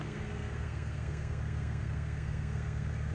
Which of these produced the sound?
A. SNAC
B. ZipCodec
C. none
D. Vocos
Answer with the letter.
A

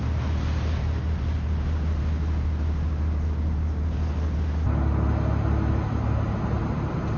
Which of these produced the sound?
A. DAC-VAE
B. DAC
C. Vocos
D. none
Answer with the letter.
D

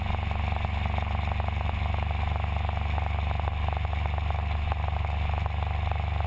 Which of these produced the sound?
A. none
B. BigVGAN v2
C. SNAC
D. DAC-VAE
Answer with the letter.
A